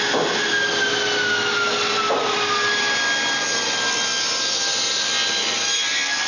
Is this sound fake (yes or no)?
no